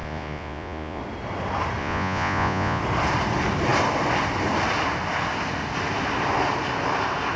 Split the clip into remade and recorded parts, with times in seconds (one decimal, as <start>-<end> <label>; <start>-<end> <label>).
0.0-1.0 remade; 1.0-1.8 recorded; 1.8-2.8 remade; 2.8-7.4 recorded